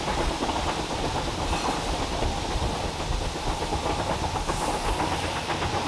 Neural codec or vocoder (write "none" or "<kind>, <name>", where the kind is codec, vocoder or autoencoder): none